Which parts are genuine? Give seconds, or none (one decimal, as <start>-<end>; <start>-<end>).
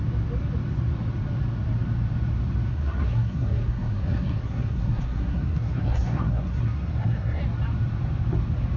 0.0-2.7; 7.4-8.8